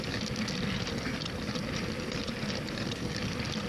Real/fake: real